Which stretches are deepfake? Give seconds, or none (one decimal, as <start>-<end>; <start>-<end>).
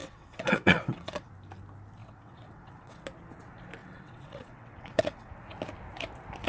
0.0-1.3; 2.0-3.0; 3.8-5.3